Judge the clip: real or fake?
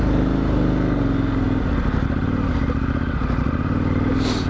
real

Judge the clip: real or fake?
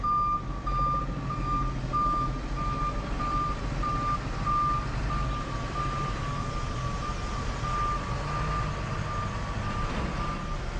real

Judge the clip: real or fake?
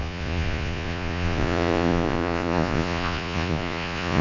fake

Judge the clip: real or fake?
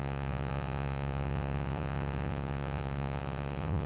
fake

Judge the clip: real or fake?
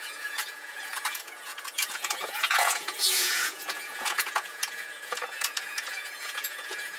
fake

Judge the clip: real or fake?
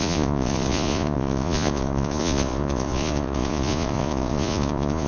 fake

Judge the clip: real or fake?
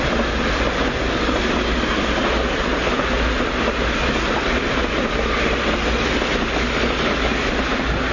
real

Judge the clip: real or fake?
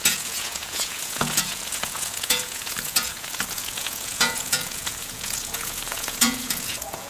fake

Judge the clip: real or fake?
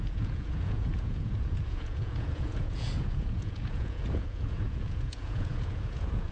fake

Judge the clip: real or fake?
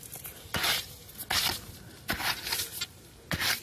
real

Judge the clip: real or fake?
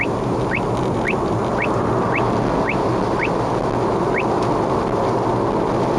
real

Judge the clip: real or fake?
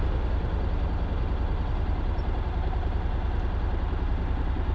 real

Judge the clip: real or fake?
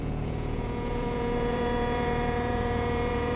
fake